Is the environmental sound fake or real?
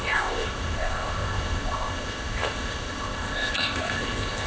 fake